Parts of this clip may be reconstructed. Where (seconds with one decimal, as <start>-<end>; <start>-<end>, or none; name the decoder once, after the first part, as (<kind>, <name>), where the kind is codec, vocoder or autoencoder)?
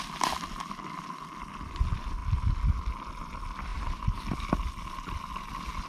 none